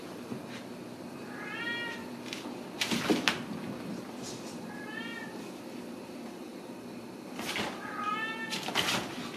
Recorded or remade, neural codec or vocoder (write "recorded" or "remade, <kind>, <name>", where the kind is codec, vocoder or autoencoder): recorded